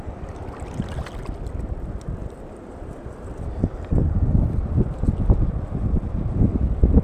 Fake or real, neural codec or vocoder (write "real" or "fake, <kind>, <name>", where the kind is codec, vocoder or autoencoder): real